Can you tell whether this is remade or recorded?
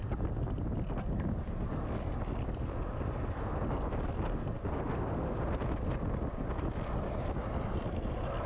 recorded